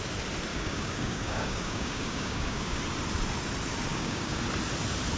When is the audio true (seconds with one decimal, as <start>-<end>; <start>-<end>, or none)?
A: 0.0-0.5; 2.8-3.9; 4.4-5.2